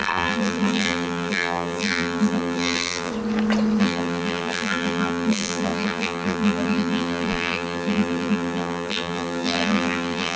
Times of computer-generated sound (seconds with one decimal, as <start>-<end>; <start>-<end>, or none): 0.0-3.1; 3.8-10.4

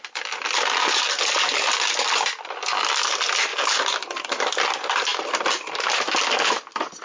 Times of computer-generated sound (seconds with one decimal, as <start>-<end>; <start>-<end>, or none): 3.5-4.0; 5.1-5.7